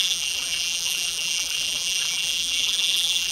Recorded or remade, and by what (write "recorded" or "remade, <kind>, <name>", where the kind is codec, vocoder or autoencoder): remade, vocoder, BigVGAN v2